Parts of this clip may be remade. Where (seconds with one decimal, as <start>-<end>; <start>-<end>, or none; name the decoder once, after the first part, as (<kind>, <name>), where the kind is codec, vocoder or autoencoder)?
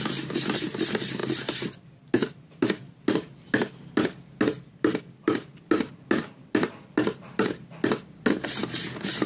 none